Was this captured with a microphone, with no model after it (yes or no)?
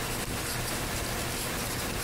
yes